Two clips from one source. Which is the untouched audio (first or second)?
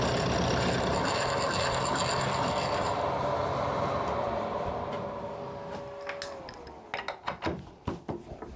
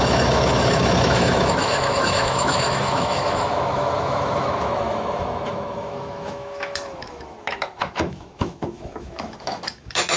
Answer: first